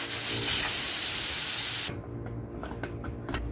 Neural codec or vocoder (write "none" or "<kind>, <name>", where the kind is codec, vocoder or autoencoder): none